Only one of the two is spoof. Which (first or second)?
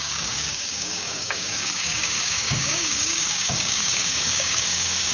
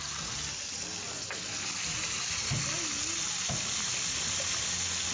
first